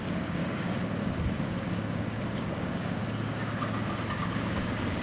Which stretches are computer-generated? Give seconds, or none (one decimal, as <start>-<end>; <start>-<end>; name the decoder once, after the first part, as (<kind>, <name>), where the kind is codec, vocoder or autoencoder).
0.0-0.4 (codec, DAC); 1.0-3.0; 4.1-5.0